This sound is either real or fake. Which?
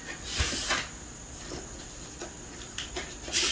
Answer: real